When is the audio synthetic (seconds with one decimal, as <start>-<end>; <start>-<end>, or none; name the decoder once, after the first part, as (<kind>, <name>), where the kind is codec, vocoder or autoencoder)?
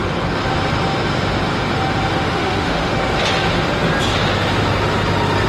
2.1-2.9 (autoencoder, DAC-VAE)